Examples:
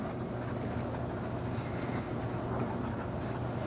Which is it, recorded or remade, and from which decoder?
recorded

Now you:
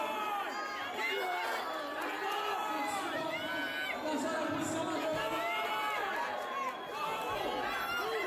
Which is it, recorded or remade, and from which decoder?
recorded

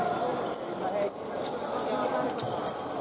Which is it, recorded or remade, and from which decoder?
recorded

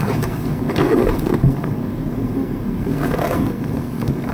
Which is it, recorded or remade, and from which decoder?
remade, codec, SNAC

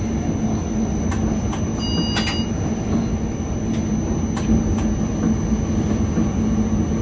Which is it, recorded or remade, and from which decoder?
recorded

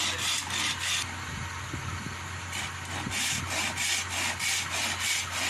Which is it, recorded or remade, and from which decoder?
recorded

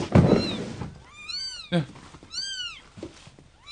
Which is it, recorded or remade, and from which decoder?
recorded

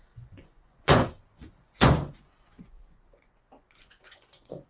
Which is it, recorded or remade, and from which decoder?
remade, vocoder, Vocos